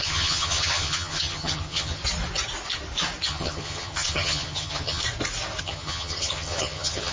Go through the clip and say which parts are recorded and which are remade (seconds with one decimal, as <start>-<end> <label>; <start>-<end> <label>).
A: 0.0-2.0 remade; 2.0-3.3 recorded; 3.3-5.0 remade; 5.0-5.6 recorded; 5.6-7.1 remade